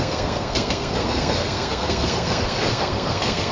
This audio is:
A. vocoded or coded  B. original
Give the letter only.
A